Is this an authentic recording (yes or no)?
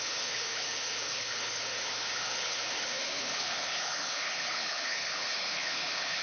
no